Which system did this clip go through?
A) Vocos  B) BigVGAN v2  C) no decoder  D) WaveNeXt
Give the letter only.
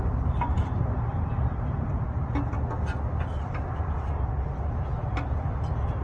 C